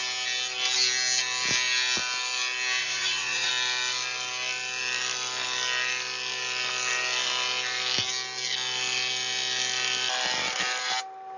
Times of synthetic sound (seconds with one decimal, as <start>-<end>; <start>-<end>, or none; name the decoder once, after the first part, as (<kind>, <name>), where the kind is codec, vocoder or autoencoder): 2.8-3.5 (vocoder, Vocos)